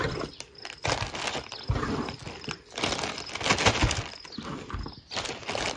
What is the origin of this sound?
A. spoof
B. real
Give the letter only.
B